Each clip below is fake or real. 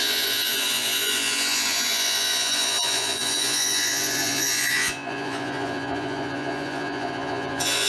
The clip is fake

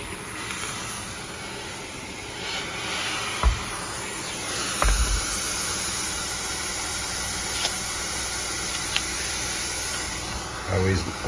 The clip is real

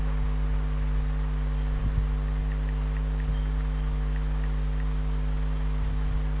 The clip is real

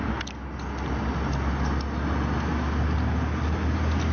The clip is real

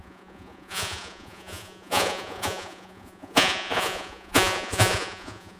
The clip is fake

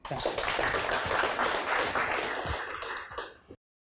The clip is real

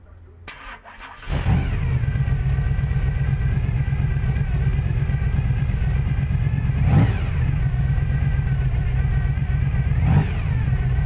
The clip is real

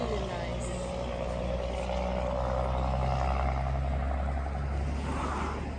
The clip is real